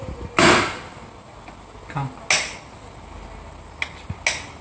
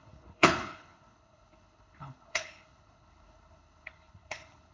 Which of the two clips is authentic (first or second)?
first